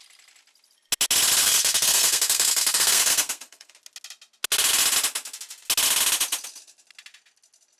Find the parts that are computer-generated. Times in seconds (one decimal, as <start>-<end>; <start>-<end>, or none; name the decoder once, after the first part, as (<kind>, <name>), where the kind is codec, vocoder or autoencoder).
1.4-3.7 (codec, SNAC)